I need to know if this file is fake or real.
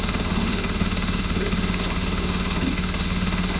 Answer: fake